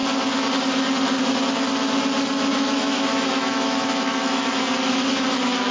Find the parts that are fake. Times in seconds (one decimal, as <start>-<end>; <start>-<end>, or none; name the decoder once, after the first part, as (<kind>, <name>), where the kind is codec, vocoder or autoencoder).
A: 2.5-4.6 (autoencoder, DAC-VAE)